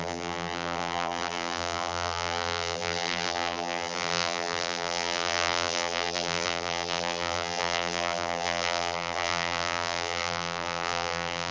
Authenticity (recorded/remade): remade